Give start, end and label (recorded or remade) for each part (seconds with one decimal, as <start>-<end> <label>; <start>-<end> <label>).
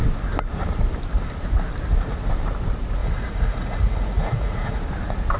0.0-3.0 recorded; 3.0-4.8 remade; 4.8-5.4 recorded